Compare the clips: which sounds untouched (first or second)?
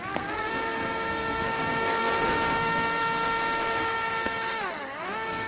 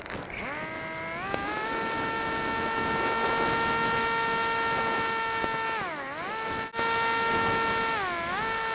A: second